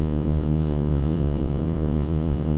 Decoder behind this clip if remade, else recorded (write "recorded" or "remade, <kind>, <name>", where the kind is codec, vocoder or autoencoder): remade, vocoder, Vocos